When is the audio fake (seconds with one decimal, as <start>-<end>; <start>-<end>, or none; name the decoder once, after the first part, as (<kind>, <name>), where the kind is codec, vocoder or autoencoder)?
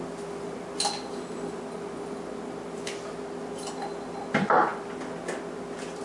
none